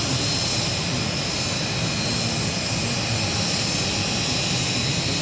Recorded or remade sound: recorded